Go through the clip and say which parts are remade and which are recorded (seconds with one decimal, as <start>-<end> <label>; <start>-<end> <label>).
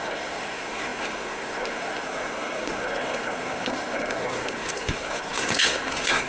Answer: 0.0-6.3 remade